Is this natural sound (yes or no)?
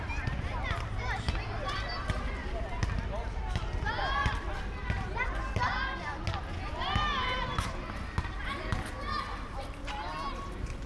yes